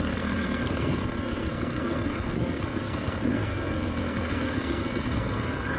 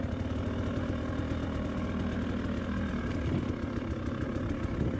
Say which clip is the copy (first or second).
first